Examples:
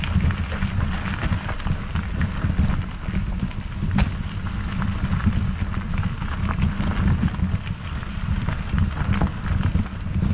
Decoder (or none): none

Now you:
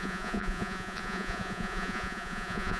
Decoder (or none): vocoder, Vocos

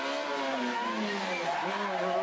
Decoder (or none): none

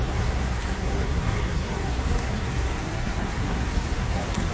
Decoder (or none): codec, SNAC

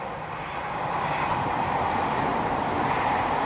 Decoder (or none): none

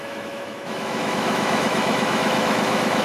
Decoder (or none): autoencoder, DAC-VAE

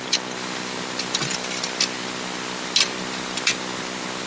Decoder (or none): none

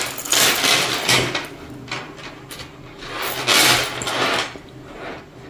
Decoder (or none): none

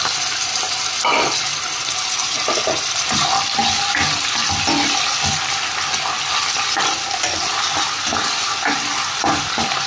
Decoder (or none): none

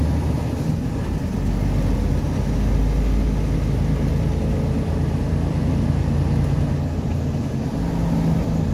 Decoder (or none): none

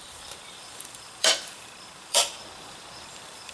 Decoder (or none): vocoder, BigVGAN v2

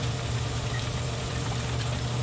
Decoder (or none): vocoder, BigVGAN v2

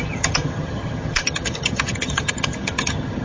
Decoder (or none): vocoder, HiFi-GAN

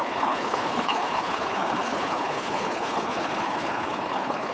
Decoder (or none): codec, HILCodec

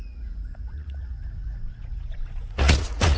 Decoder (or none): vocoder, Vocos